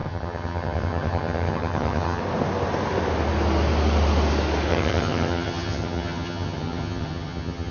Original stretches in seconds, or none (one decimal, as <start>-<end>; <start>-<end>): 2.2-4.7